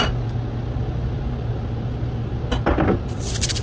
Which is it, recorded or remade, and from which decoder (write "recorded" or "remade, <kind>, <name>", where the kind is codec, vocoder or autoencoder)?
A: recorded